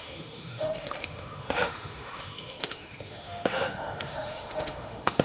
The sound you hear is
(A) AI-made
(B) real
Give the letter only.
A